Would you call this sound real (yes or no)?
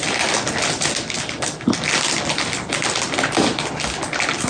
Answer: yes